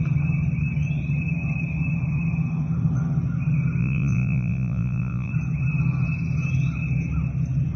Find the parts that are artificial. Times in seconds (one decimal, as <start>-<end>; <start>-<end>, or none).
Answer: 3.8-5.3